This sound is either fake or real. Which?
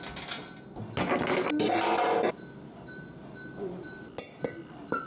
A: real